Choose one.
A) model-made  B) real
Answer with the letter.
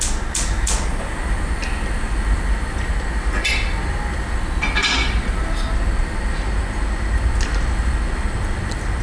B